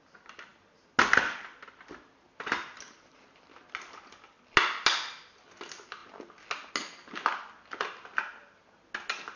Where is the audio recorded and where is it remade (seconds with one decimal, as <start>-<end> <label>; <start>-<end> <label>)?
0.0-9.4 recorded